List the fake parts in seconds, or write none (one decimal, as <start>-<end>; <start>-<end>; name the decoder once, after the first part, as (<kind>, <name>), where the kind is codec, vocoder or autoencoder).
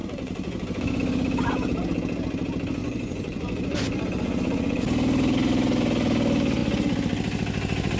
0.0-0.8 (vocoder, Vocos); 2.8-4.8